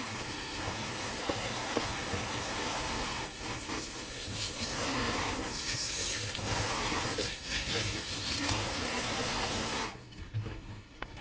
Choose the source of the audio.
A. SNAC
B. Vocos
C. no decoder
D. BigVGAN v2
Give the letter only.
A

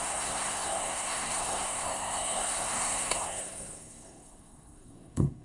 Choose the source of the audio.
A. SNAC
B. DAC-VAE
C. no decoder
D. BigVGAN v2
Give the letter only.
A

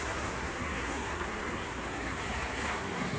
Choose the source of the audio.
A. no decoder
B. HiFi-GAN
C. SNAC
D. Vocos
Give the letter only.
C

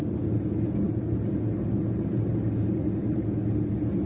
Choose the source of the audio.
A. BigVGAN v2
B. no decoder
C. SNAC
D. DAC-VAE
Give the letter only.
B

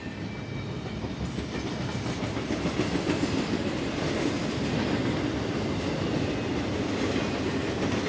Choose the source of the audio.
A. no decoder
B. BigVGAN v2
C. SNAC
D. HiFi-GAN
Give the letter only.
A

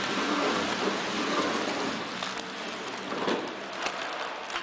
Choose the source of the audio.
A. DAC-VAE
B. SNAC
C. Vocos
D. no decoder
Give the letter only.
D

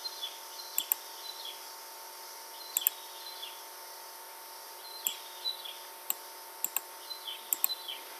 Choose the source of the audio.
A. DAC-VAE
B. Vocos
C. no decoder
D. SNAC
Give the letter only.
C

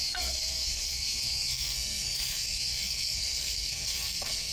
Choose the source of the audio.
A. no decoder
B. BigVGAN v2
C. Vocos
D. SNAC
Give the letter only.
D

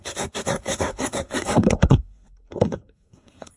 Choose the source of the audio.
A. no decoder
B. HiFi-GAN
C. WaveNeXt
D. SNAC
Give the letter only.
D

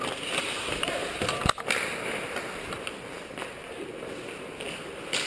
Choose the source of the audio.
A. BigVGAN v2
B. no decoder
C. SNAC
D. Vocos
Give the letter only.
B